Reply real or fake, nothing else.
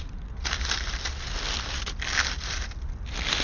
real